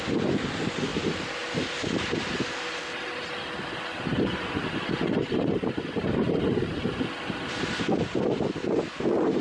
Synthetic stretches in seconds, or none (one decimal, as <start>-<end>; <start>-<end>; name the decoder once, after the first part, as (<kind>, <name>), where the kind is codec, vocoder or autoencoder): 4.1-6.9 (vocoder, BigVGAN v2)